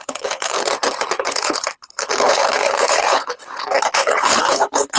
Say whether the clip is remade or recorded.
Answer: remade